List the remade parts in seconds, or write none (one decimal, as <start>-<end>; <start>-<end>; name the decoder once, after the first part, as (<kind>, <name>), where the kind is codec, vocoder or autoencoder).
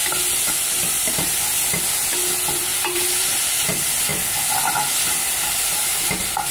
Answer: 2.7-3.4 (vocoder, BigVGAN v2)